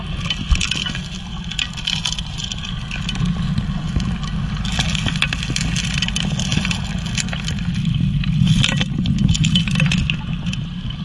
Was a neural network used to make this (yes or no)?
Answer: no